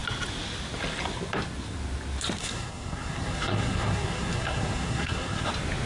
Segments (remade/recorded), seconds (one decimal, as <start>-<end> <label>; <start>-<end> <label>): 0.0-2.4 recorded; 2.4-5.5 remade; 5.5-5.9 recorded